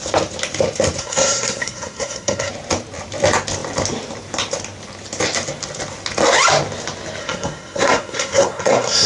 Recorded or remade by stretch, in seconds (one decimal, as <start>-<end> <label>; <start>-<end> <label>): 0.0-1.0 recorded; 1.0-2.5 remade; 2.5-7.2 recorded; 7.2-9.1 remade